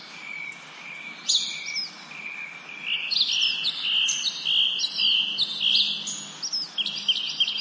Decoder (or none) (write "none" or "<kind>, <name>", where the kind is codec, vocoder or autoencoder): none